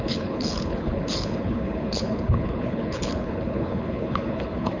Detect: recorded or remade remade